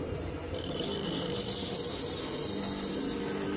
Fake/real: real